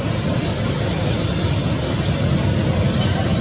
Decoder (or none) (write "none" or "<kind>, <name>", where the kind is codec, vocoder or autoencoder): none